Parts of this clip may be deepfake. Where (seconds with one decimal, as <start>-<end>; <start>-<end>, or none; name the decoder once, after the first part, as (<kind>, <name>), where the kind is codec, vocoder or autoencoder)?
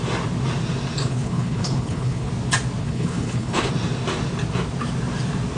1.0-2.3 (codec, HILCodec); 2.8-3.7